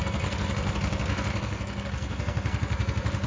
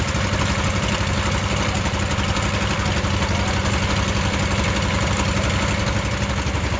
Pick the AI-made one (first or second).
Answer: first